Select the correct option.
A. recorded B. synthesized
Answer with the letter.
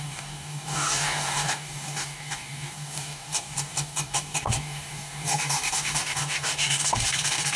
B